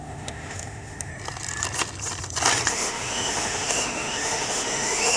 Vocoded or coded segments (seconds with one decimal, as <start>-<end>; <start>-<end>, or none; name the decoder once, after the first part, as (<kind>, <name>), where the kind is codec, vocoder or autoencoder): 0.0-1.1 (autoencoder, DAC-VAE); 2.7-5.2